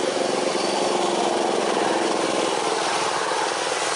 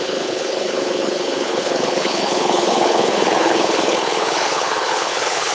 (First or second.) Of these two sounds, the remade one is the second